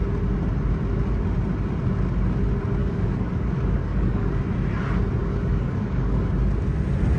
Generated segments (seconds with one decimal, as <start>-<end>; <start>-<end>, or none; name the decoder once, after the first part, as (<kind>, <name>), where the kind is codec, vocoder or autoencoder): 2.8-4.4 (codec, DAC); 5.2-6.3